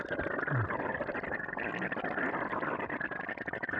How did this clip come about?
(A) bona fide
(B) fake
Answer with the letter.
A